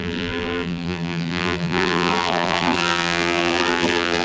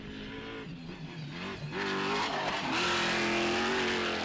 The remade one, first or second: first